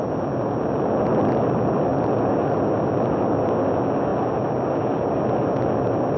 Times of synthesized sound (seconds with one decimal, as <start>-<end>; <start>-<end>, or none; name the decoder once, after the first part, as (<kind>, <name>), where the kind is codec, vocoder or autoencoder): none